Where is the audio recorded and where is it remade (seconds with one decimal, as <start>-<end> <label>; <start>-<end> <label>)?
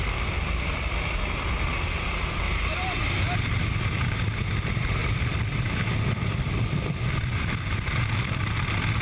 0.0-5.0 recorded; 5.0-8.4 remade; 8.4-9.0 recorded